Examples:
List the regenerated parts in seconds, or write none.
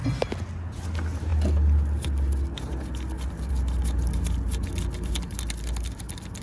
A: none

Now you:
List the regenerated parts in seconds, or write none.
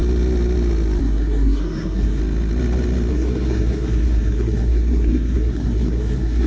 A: 1.0-2.2 (codec, SNAC); 3.1-6.5